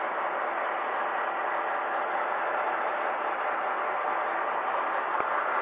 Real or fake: real